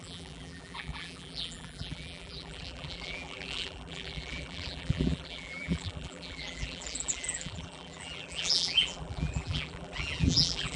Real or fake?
fake